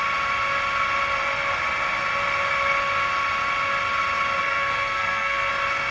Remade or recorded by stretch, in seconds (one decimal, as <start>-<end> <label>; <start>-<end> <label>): 0.0-4.4 recorded; 4.4-5.5 remade; 5.5-5.9 recorded